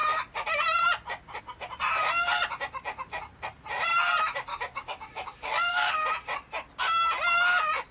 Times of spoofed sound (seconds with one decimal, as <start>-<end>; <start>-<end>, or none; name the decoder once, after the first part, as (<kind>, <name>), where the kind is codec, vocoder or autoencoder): 4.5-5.9 (codec, DAC)